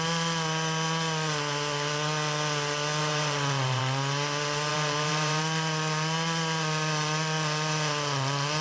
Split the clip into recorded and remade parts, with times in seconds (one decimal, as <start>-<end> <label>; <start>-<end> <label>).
0.0-3.0 recorded; 3.0-3.8 remade; 3.8-4.7 recorded; 4.7-5.4 remade; 5.4-8.6 recorded